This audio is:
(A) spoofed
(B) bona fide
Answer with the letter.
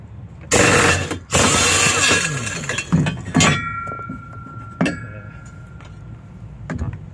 B